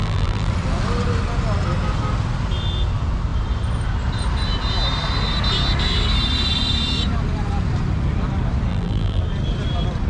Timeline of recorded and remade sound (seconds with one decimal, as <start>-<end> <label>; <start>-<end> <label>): 0.0-0.5 remade; 0.5-8.7 recorded; 8.7-9.2 remade; 9.2-10.1 recorded